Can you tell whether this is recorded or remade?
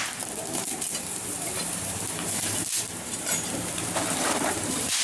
remade